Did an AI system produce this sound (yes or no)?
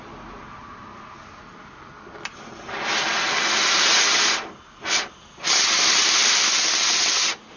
no